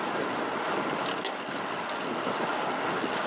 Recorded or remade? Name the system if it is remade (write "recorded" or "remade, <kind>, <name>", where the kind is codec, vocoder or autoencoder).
recorded